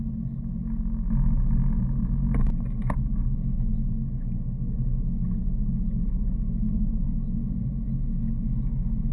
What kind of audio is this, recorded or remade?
recorded